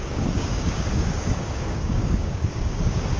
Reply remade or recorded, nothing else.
remade